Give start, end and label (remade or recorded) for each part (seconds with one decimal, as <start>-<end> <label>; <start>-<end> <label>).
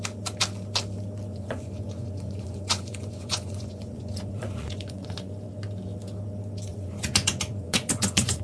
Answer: 0.0-1.3 recorded; 1.3-5.3 remade; 5.3-6.7 recorded; 6.7-8.4 remade